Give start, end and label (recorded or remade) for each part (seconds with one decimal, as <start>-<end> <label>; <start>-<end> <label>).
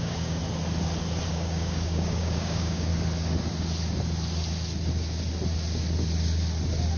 0.0-0.4 remade; 0.4-1.3 recorded; 1.3-2.9 remade; 2.9-7.0 recorded